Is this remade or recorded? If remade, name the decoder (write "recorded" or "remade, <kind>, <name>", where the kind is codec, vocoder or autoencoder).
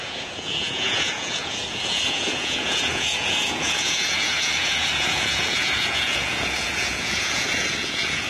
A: remade, vocoder, Vocos